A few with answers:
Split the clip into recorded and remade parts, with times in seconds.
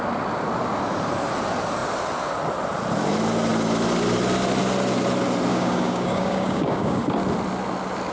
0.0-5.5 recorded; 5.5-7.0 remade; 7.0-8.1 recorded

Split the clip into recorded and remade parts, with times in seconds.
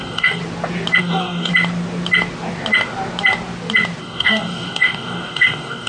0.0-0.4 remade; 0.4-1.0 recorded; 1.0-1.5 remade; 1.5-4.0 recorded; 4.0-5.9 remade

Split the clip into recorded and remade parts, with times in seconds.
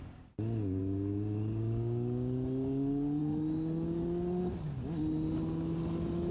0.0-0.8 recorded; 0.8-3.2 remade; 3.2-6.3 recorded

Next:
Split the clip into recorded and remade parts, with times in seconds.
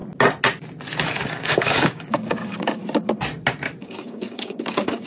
0.0-1.3 recorded; 1.3-2.8 remade; 2.8-3.8 recorded; 3.8-5.1 remade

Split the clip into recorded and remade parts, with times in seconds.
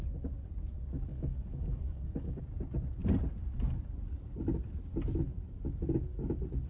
0.0-1.1 recorded; 1.1-2.4 remade; 2.4-6.7 recorded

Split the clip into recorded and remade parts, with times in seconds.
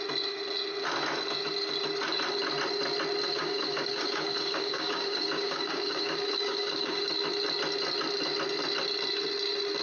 0.0-3.3 recorded; 3.3-7.0 remade; 7.0-9.8 recorded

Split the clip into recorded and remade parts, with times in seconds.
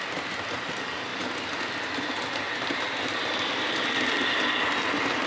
0.0-5.3 recorded